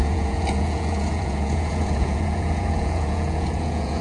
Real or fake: fake